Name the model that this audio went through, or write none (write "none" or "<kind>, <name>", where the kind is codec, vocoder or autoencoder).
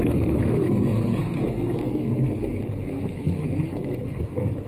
codec, SNAC